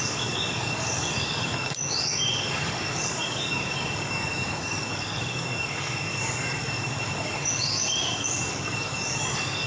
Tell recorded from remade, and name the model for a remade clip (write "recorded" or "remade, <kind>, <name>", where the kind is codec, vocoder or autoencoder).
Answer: remade, codec, DAC